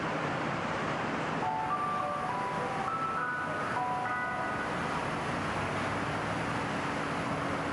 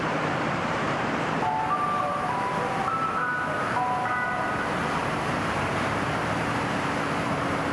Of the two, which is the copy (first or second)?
second